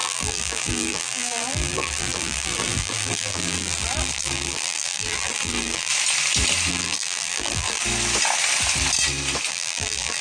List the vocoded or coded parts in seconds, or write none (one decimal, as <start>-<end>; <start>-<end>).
0.0-5.9; 6.7-7.8; 9.5-10.2